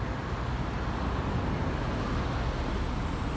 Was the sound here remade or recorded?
recorded